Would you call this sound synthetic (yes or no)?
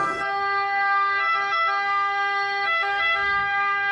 yes